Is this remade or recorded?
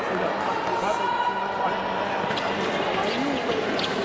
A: recorded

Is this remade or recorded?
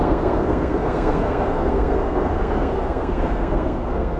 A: remade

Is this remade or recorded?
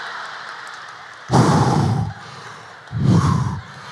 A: recorded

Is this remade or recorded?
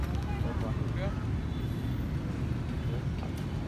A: recorded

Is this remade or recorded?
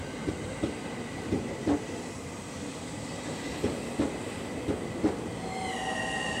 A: recorded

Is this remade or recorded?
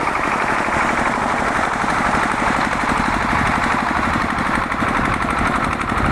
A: recorded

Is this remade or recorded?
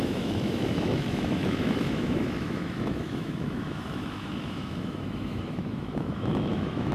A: remade